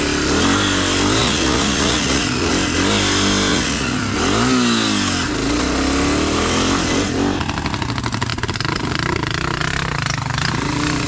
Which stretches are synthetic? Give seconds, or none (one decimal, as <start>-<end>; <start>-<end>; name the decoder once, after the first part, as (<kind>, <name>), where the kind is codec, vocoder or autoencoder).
1.2-2.5 (vocoder, Vocos); 3.5-4.0